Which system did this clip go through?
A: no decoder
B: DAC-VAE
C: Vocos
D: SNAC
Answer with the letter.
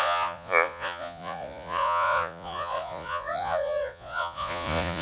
C